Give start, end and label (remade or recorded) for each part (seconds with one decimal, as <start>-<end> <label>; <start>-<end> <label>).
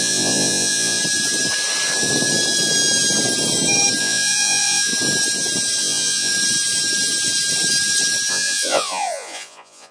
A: 0.0-1.0 remade; 1.0-4.0 recorded; 4.0-4.9 remade; 4.9-5.8 recorded; 5.8-6.3 remade; 6.3-8.3 recorded; 8.3-9.9 remade